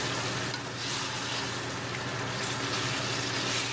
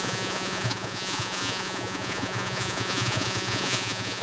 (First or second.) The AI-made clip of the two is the second